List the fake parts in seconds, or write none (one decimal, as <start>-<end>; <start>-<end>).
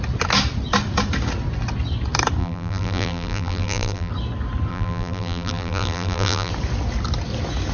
2.4-4.1; 4.7-6.5